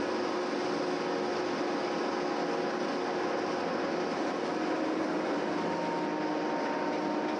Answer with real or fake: real